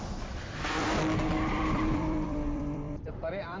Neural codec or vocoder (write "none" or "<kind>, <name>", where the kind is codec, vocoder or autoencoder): vocoder, BigVGAN v2